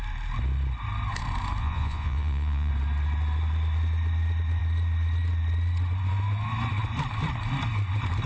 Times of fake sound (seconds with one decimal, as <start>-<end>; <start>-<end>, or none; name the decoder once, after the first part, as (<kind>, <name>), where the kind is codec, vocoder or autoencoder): 1.6-2.7 (vocoder, Vocos)